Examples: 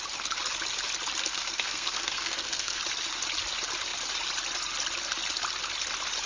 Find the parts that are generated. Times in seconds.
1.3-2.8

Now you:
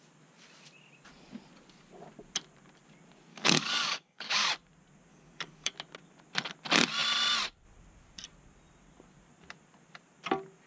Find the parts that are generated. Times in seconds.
3.3-4.5; 5.1-5.7

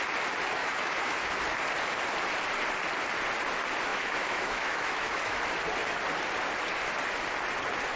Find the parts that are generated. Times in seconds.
0.6-1.4; 3.9-5.4

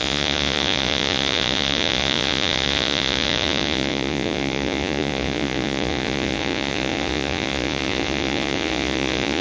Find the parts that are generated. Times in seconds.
0.0-9.4

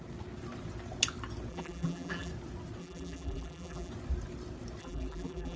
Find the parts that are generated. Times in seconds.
1.5-2.3; 2.8-3.9; 4.8-5.6

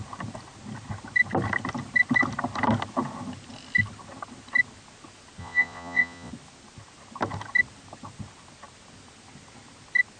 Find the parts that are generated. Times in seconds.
5.4-6.3